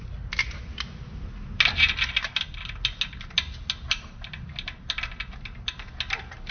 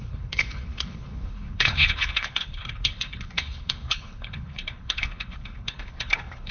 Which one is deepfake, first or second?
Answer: second